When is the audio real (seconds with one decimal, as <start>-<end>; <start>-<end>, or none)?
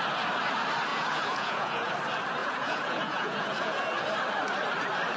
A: 0.0-0.9; 1.9-2.4; 3.8-5.2